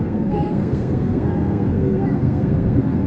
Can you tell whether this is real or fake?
fake